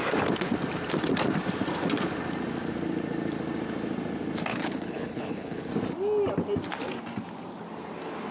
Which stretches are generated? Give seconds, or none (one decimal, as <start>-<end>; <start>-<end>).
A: 4.5-5.7